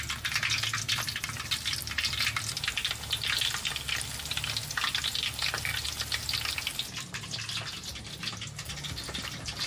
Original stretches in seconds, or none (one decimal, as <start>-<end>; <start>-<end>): 0.0-9.7